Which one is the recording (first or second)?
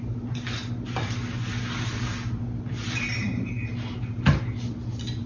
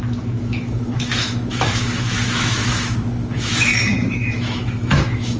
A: first